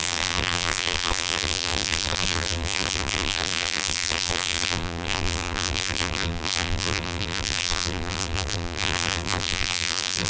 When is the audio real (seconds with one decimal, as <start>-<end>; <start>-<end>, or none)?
none